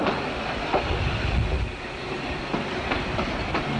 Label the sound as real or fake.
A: real